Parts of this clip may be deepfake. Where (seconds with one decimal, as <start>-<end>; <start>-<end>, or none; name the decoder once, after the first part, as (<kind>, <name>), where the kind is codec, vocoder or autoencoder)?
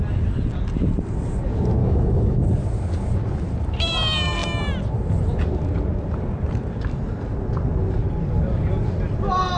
1.8-2.5 (autoencoder, DAC-VAE)